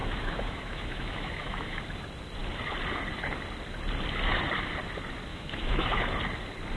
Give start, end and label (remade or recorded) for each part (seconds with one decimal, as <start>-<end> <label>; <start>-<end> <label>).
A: 0.0-1.8 remade; 1.8-5.3 recorded; 5.3-6.1 remade; 6.1-6.8 recorded